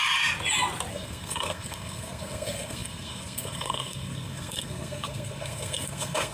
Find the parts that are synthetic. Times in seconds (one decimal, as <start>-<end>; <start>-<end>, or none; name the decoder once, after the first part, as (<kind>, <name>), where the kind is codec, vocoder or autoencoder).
0.9-6.3 (codec, SNAC)